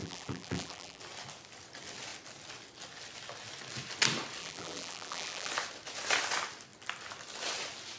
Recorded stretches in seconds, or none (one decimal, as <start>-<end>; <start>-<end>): 1.0-4.4; 5.5-8.0

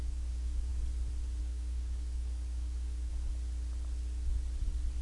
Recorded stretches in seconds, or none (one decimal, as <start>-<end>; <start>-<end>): 0.7-1.4; 3.1-5.0

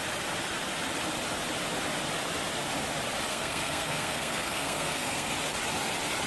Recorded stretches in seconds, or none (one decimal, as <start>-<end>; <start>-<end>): 0.0-3.3; 5.3-6.3

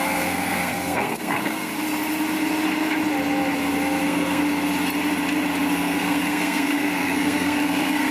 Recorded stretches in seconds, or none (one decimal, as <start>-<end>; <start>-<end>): 1.7-4.0; 4.4-5.7